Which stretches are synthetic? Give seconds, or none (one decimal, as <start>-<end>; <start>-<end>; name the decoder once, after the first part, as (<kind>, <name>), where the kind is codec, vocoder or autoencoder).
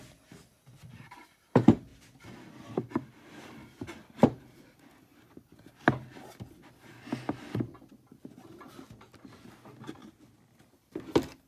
1.9-3.1 (vocoder, BigVGAN v2)